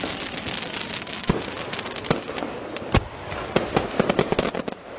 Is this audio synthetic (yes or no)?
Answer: no